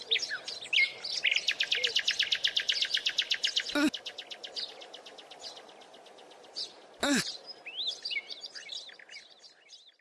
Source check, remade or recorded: recorded